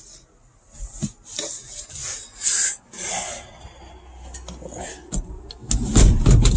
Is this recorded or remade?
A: recorded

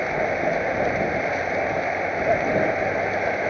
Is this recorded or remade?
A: recorded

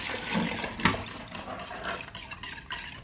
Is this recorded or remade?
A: recorded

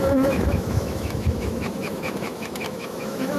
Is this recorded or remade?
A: remade